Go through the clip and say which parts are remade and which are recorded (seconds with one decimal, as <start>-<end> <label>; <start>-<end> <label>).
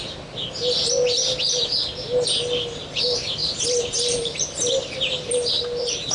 0.0-3.4 recorded; 3.4-6.1 remade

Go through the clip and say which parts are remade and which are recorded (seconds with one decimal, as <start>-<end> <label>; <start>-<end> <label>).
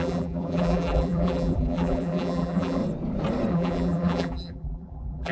0.0-2.8 remade; 2.8-3.5 recorded; 3.5-5.3 remade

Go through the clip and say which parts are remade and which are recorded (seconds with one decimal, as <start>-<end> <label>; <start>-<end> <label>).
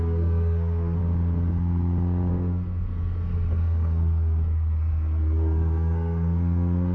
0.0-1.0 remade; 1.0-2.3 recorded; 2.3-6.9 remade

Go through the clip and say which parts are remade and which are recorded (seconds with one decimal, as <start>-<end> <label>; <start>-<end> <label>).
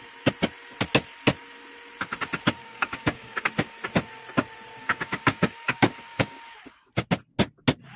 0.0-2.6 recorded; 2.6-3.4 remade; 3.4-4.8 recorded; 4.8-6.9 remade; 6.9-8.0 recorded